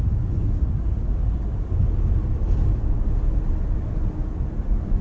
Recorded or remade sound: recorded